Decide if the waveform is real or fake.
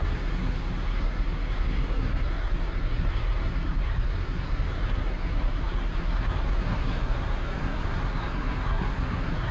fake